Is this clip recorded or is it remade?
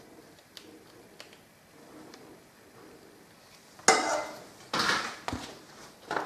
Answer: recorded